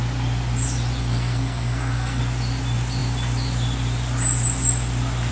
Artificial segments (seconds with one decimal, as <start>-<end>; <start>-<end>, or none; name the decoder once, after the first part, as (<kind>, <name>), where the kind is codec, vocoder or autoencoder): 1.0-2.2 (codec, SNAC)